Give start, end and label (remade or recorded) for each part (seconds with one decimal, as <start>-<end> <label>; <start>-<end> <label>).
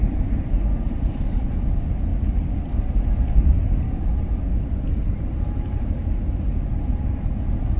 0.0-2.1 remade; 2.1-3.6 recorded; 3.6-4.5 remade; 4.5-7.3 recorded; 7.3-7.8 remade